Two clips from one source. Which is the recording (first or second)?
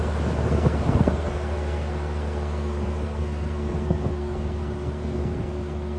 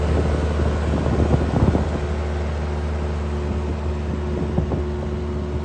second